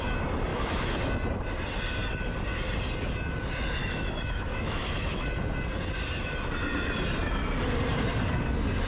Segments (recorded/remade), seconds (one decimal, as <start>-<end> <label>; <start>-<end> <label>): 0.0-0.5 recorded; 0.5-1.1 remade; 1.1-3.8 recorded; 3.8-5.3 remade; 5.3-8.9 recorded